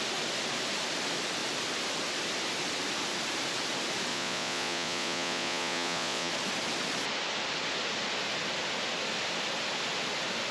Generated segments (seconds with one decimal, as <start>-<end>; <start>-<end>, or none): 4.1-6.3